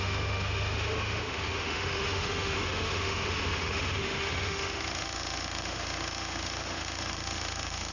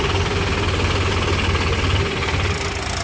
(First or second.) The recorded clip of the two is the second